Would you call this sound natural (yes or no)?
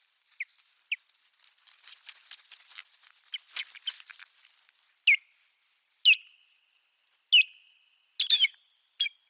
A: yes